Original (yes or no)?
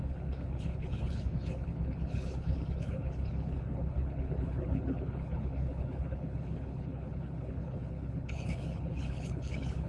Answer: no